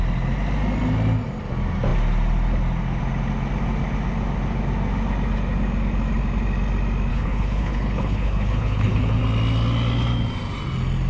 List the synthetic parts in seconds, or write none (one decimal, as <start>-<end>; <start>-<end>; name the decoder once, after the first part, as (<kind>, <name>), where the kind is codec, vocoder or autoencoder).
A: 7.1-9.2 (codec, HILCodec)